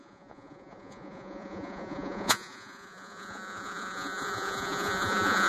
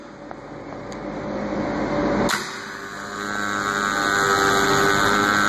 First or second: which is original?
second